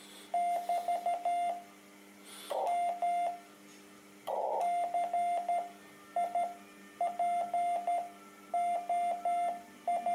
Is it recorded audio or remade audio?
recorded